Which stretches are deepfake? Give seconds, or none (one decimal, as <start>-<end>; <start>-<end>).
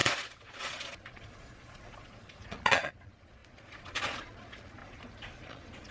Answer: 0.0-4.8; 5.3-5.9